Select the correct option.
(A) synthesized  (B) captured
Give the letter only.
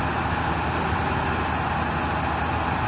B